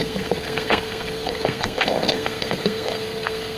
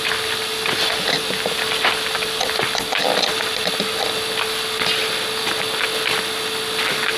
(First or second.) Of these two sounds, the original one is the second